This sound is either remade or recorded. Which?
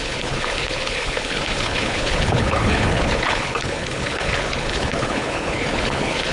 remade